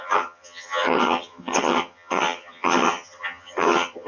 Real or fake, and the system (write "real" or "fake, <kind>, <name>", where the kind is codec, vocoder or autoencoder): fake, vocoder, HiFi-GAN